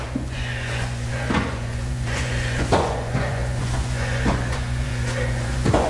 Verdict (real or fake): fake